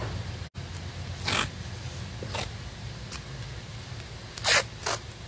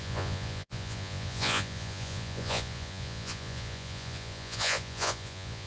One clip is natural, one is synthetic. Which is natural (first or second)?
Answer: first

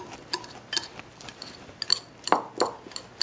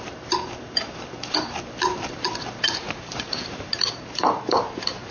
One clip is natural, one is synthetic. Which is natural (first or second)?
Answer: first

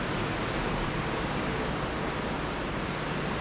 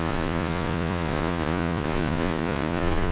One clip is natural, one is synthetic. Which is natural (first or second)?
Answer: first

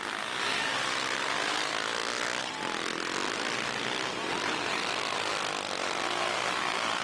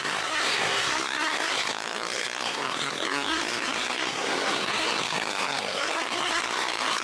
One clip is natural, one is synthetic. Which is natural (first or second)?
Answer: first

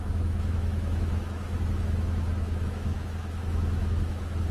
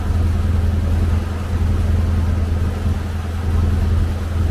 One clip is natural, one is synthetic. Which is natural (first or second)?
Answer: second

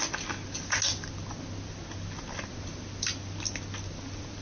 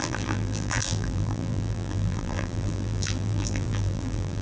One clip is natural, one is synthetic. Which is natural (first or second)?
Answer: first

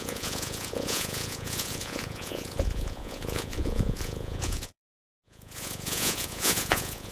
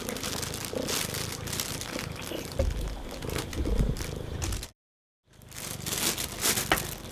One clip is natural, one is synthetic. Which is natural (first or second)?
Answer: second